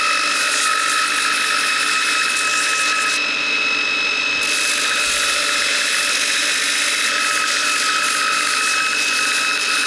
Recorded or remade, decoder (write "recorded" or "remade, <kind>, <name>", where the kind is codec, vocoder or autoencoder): recorded